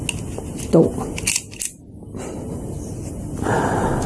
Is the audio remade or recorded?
recorded